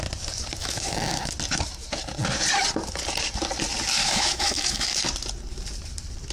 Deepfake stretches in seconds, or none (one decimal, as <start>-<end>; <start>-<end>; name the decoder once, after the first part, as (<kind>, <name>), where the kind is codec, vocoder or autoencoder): 0.6-1.3 (autoencoder, DAC-VAE); 4.0-5.0